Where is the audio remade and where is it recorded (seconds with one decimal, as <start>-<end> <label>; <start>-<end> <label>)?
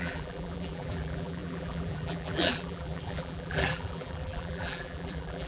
0.0-5.5 remade